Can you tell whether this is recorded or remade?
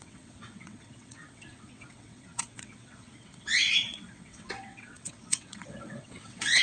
remade